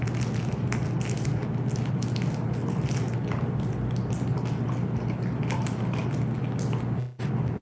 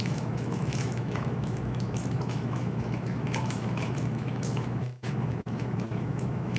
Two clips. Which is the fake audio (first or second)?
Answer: second